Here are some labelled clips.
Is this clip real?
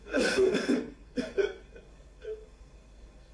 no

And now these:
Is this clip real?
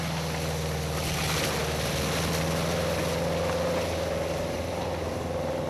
yes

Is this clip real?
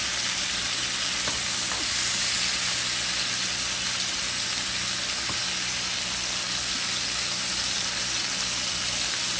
yes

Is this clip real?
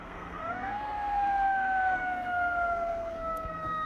no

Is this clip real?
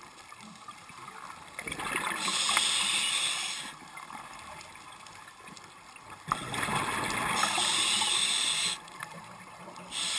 yes